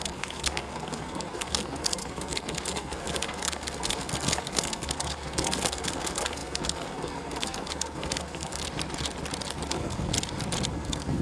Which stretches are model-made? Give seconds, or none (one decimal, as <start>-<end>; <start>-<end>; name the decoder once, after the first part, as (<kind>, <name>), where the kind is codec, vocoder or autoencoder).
0.0-8.6 (codec, SNAC); 9.7-10.1; 10.7-11.2